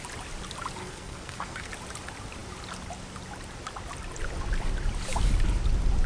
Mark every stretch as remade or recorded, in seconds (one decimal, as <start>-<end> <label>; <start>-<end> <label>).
0.0-0.8 recorded; 0.8-1.7 remade; 1.7-6.1 recorded